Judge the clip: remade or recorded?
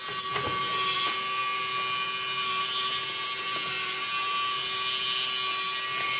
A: recorded